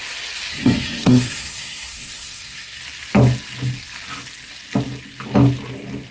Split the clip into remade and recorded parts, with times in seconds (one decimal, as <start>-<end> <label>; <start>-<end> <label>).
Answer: 0.0-0.5 recorded; 0.5-2.8 remade; 2.8-6.1 recorded